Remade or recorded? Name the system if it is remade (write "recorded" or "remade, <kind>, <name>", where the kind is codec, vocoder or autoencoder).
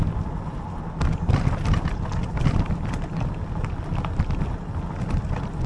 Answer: recorded